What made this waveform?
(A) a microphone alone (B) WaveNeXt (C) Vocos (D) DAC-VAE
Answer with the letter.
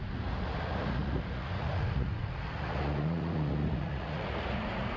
C